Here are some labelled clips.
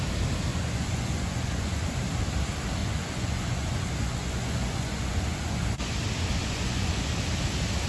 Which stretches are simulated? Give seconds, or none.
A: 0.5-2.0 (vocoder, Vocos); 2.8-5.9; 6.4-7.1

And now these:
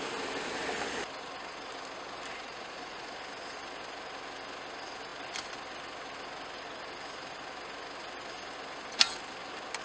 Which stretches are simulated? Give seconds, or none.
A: 2.3-3.1 (vocoder, Vocos)

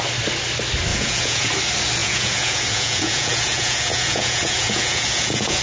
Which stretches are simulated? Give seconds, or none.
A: 0.9-1.5 (vocoder, Vocos); 2.0-5.6